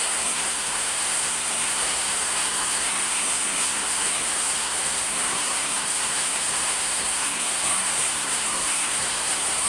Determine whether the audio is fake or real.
fake